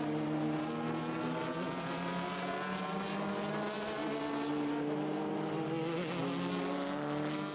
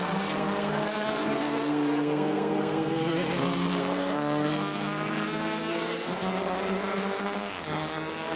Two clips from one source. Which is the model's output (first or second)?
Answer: second